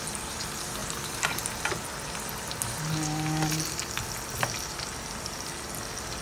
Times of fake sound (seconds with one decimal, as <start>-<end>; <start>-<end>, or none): 0.8-1.7